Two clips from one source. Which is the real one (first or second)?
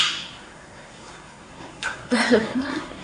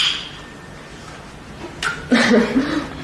second